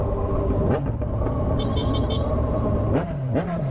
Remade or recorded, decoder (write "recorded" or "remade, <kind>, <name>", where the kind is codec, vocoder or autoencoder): remade, vocoder, BigVGAN v2